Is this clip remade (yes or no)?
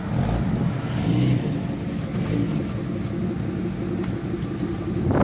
no